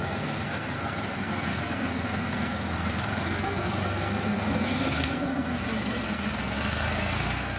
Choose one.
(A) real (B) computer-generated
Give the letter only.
B